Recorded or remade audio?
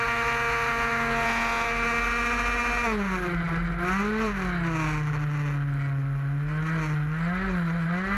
recorded